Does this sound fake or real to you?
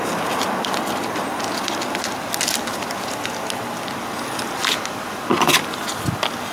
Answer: real